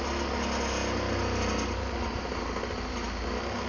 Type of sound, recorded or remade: recorded